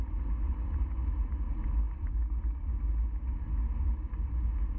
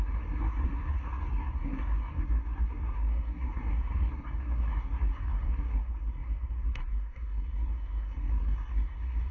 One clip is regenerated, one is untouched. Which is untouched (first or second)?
first